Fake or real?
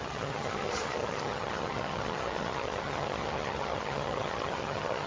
fake